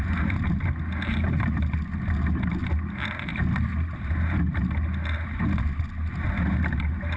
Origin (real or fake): real